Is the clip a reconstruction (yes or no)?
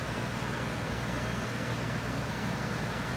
yes